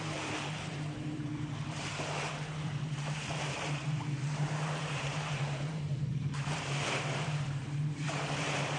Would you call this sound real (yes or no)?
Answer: no